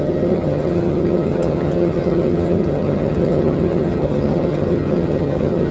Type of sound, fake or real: fake